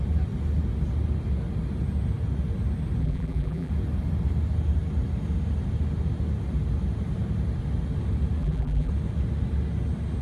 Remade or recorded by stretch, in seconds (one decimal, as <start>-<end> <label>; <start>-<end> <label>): 0.0-3.0 recorded; 3.0-3.7 remade; 3.7-8.4 recorded; 8.4-8.9 remade; 8.9-10.2 recorded